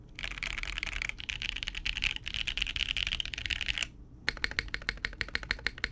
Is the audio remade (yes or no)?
no